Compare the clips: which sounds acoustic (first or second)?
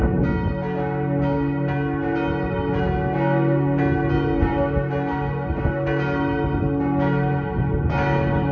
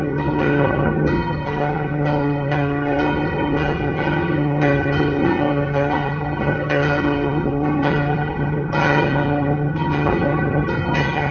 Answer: first